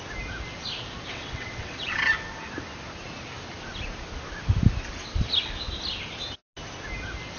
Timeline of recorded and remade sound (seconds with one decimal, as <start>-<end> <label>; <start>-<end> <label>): 0.0-1.1 recorded; 1.1-2.1 remade; 2.1-7.4 recorded